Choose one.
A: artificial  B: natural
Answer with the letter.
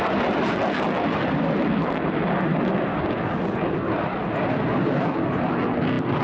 B